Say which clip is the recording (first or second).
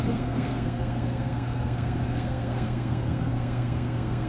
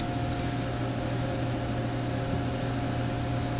second